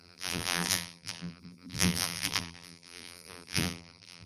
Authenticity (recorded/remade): remade